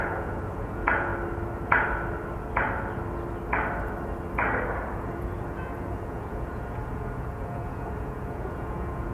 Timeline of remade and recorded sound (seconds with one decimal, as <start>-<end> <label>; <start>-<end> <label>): 0.0-1.1 remade; 1.1-4.8 recorded; 4.8-9.1 remade